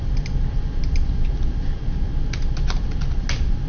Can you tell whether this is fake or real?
real